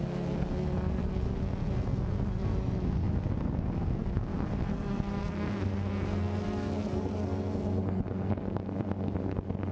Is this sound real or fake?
fake